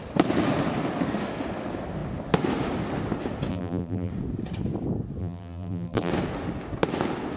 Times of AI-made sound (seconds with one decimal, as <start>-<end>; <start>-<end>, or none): 3.5-4.1; 5.2-6.1